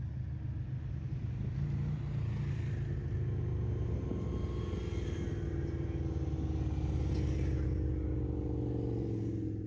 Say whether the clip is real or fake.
real